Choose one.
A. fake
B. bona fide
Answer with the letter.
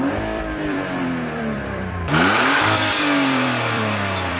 A